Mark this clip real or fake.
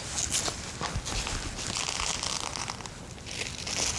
real